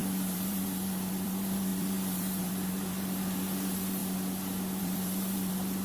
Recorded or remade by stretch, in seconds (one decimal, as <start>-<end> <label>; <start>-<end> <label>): 0.0-4.0 remade; 4.0-4.8 recorded; 4.8-5.8 remade